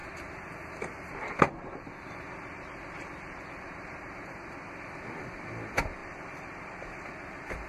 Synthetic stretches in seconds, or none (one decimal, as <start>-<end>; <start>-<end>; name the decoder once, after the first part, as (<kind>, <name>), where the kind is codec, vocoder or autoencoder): 6.0-6.6 (vocoder, BigVGAN v2)